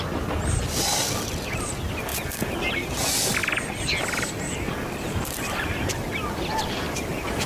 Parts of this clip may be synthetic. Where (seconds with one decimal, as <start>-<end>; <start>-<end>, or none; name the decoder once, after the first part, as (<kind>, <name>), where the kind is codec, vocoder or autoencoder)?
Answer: none